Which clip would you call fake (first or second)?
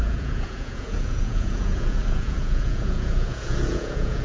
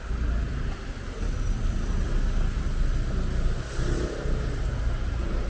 first